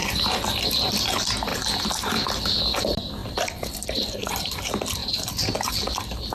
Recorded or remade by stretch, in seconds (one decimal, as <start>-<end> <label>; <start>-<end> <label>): 0.0-1.0 recorded; 1.0-1.5 remade; 1.5-2.8 recorded; 2.8-5.0 remade; 5.0-5.7 recorded; 5.7-6.3 remade